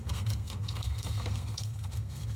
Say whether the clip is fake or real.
fake